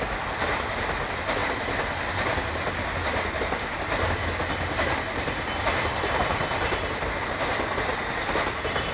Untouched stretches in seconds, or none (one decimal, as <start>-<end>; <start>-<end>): 0.0-8.9